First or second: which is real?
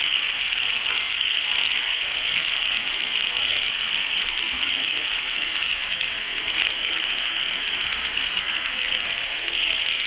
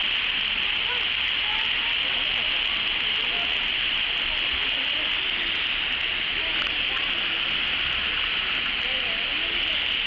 second